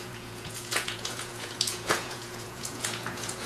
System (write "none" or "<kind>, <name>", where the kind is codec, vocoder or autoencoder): vocoder, Vocos